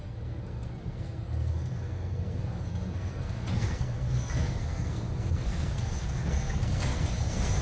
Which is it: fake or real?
fake